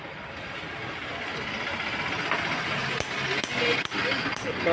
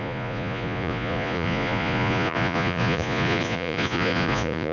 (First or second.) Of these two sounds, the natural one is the first